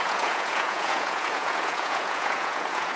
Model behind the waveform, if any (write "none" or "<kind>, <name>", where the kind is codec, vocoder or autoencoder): vocoder, Vocos